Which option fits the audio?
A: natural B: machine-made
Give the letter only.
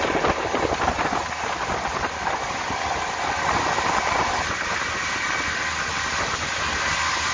A